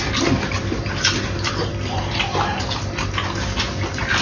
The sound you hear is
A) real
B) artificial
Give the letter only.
A